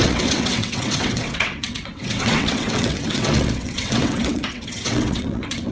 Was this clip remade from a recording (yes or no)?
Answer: yes